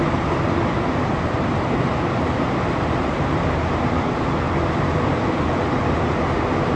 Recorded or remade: remade